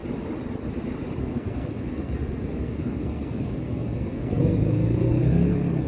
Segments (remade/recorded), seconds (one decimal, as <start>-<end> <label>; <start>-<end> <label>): 0.0-1.2 recorded; 1.2-5.9 remade